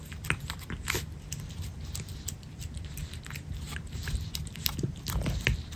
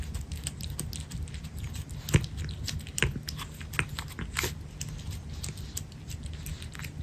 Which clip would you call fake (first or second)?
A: first